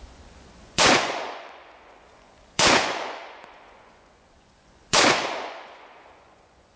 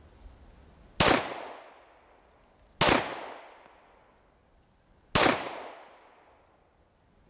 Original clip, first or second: second